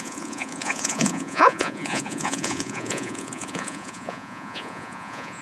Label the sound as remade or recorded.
remade